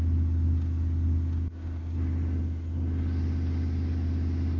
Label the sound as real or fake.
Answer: real